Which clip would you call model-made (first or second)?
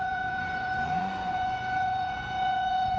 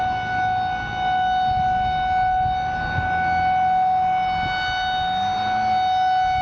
first